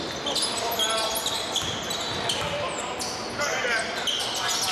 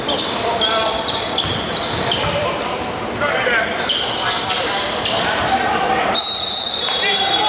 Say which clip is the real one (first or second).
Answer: first